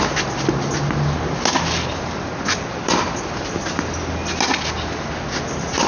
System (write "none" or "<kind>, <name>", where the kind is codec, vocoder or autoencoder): none